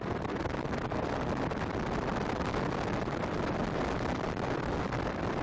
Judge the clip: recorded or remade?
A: recorded